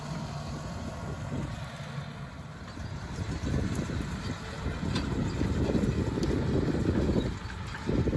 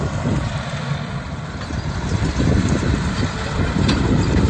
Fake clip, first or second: second